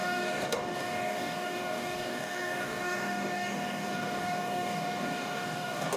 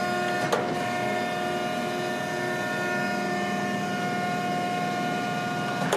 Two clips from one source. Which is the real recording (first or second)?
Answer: second